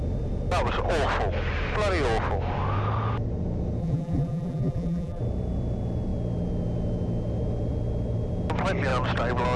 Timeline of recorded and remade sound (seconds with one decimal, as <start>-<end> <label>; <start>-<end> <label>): 0.0-3.8 recorded; 3.8-5.2 remade; 5.2-9.6 recorded